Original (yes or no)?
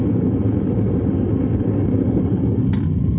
yes